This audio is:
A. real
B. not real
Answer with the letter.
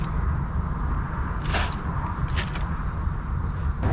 A